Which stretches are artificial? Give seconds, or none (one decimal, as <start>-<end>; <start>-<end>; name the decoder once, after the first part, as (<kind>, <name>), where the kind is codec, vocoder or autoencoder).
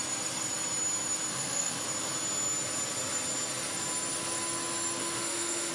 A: 1.3-1.8 (autoencoder, DAC-VAE); 5.0-5.7